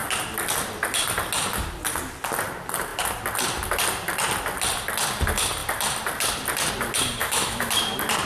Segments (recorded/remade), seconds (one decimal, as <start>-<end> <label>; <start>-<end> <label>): 0.0-7.2 recorded; 7.2-7.7 remade; 7.7-8.3 recorded